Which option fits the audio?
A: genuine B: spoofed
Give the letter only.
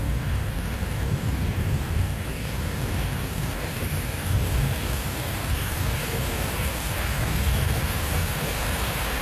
B